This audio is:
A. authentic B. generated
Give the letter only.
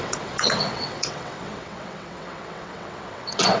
B